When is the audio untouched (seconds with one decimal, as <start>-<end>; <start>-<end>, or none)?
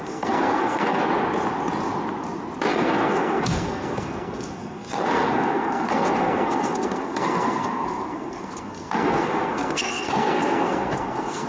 1.0-2.7